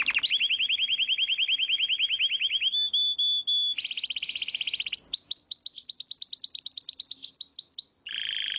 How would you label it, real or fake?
real